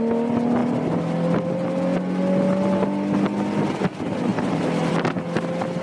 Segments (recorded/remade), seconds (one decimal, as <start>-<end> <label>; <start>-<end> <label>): 0.0-5.8 recorded